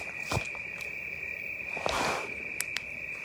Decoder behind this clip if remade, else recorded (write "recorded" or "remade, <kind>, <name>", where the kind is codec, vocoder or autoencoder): recorded